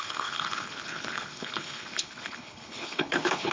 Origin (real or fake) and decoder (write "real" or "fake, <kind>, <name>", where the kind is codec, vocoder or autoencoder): fake, codec, HILCodec